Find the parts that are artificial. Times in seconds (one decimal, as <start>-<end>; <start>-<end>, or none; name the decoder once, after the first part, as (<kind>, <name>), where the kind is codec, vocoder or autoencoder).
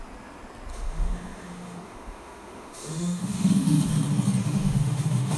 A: 0.7-3.9 (autoencoder, DAC-VAE); 4.4-5.4